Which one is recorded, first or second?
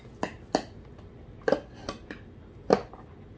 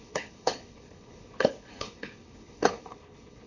first